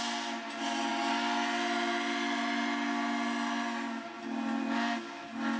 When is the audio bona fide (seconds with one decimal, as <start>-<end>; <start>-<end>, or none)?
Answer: 0.0-5.6